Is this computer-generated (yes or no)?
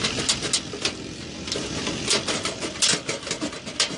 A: no